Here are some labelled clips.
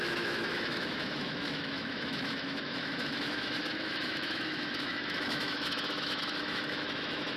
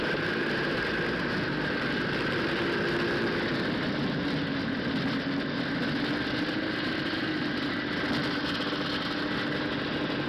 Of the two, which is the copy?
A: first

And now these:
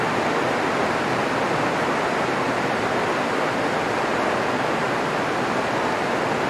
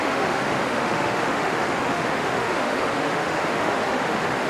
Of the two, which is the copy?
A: second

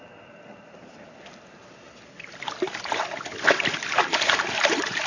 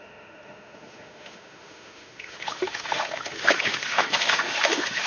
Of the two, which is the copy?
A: second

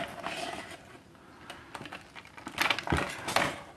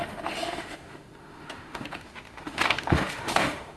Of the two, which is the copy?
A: second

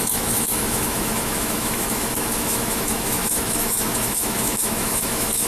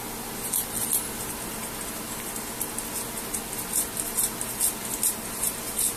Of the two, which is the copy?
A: first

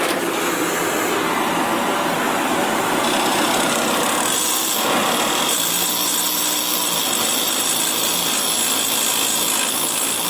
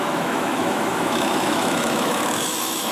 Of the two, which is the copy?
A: second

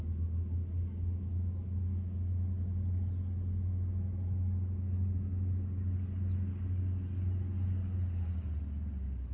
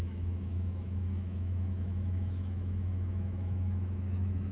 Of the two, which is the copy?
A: second